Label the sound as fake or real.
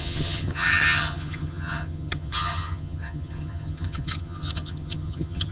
fake